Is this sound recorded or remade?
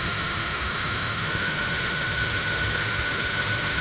remade